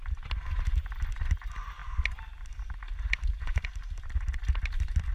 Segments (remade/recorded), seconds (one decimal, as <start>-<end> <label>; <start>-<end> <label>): 0.0-5.1 recorded